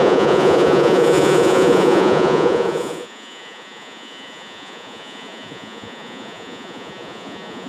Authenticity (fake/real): fake